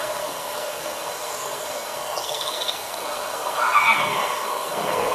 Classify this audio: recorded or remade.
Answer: remade